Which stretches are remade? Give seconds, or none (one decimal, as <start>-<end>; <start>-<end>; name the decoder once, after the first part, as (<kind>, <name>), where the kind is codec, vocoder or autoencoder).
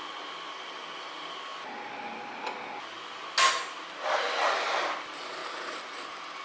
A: none